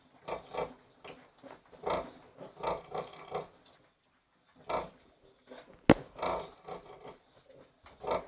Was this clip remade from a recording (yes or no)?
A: no